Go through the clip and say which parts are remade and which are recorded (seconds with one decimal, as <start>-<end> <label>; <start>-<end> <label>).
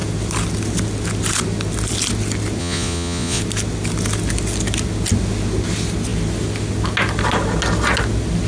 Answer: 0.0-2.6 recorded; 2.6-3.4 remade; 3.4-8.5 recorded